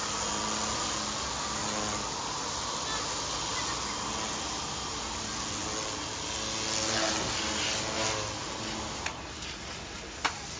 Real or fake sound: real